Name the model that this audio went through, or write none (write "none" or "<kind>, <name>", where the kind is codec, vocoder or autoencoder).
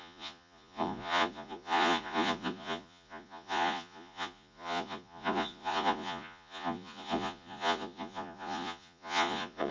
vocoder, Vocos